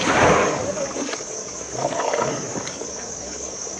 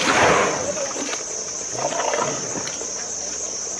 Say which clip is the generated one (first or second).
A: first